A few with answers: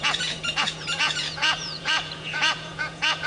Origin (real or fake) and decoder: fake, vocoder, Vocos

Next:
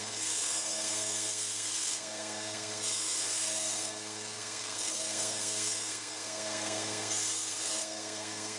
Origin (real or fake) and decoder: fake, codec, SNAC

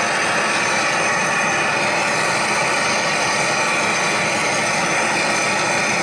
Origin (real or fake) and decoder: real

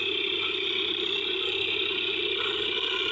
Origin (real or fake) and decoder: fake, vocoder, BigVGAN v2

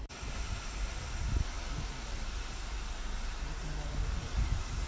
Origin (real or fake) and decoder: real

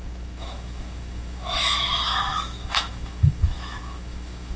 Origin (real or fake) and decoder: fake, autoencoder, DAC-VAE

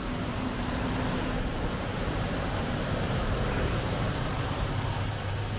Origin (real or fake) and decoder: fake, vocoder, BigVGAN v2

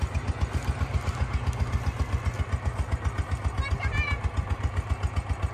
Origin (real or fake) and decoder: real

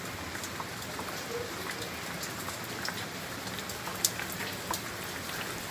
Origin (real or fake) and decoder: real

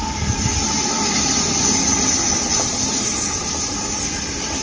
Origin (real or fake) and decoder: real